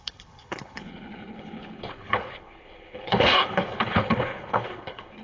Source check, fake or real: fake